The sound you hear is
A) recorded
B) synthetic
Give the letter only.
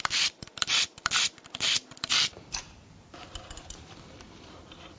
B